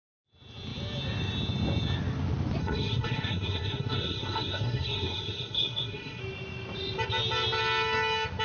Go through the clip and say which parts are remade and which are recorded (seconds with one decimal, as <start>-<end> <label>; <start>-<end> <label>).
0.0-2.6 recorded; 2.6-6.2 remade; 6.2-8.4 recorded